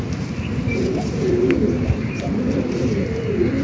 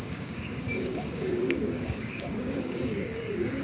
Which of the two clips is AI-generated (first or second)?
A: second